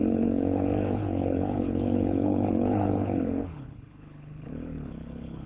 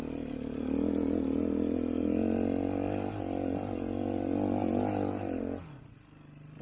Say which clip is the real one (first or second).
second